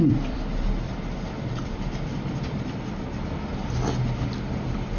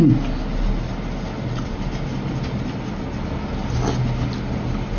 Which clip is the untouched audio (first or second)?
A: second